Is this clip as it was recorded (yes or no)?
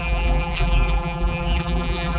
no